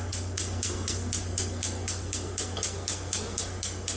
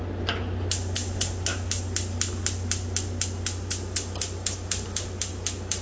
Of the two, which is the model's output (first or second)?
first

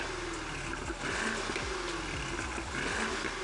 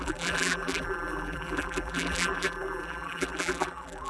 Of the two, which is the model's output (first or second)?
second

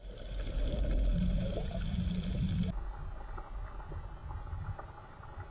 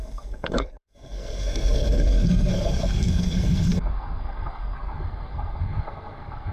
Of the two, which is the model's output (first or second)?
second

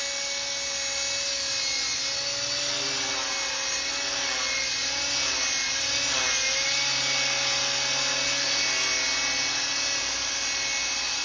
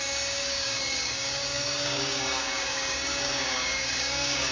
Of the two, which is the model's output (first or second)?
second